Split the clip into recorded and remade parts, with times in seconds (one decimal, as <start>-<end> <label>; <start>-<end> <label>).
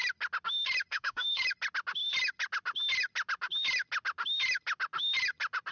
0.0-0.9 recorded; 0.9-1.4 remade; 1.4-5.7 recorded